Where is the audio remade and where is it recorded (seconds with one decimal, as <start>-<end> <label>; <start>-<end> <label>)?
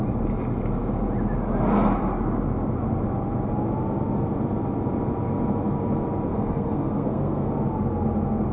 0.0-6.3 recorded; 6.3-7.5 remade; 7.5-8.5 recorded